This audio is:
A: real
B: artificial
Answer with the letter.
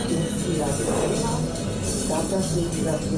A